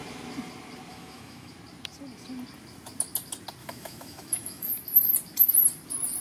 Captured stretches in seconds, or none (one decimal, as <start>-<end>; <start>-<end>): 0.0-0.9; 1.5-3.6; 4.7-6.2